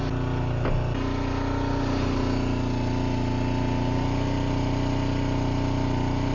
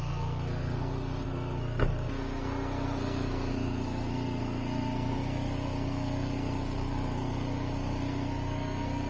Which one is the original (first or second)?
first